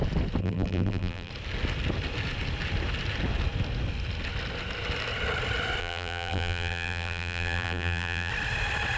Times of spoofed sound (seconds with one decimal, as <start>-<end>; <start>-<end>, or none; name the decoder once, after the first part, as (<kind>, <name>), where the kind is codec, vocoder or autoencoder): 0.4-1.3 (vocoder, BigVGAN v2); 5.8-8.3